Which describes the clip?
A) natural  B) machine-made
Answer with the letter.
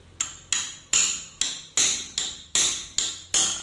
A